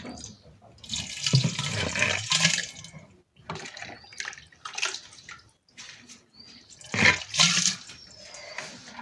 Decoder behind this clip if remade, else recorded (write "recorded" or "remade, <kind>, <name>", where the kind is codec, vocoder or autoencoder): recorded